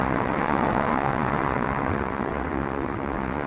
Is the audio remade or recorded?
remade